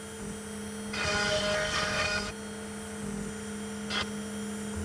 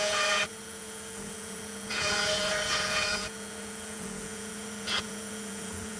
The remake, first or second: second